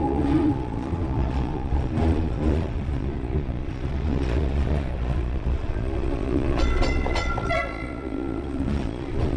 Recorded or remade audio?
remade